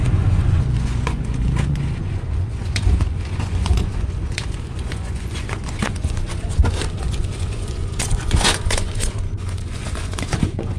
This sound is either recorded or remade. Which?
remade